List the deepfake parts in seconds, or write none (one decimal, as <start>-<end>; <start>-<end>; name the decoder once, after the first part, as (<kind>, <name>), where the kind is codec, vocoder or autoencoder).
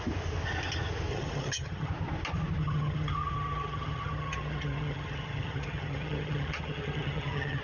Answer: 1.1-1.9 (vocoder, HiFi-GAN); 2.6-7.6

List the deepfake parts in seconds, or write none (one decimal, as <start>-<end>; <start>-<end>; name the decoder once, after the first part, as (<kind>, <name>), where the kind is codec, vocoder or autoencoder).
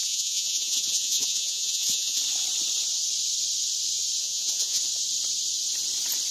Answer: 0.0-2.2 (vocoder, Vocos); 4.2-4.8